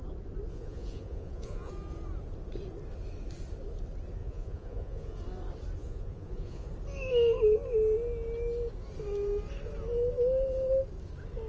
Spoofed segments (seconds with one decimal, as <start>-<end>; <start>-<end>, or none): 0.5-1.7; 4.2-5.2; 5.8-6.7